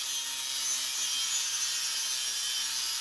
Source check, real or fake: real